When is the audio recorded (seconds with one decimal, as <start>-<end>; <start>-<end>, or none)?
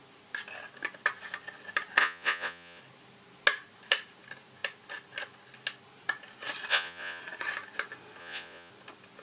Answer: 0.0-2.0; 2.8-6.7; 7.2-8.2; 8.7-9.2